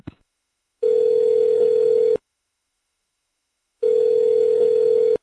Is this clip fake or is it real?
fake